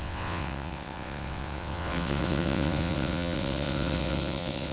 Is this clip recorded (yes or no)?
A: no